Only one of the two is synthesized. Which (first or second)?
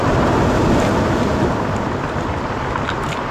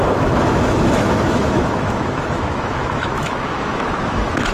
second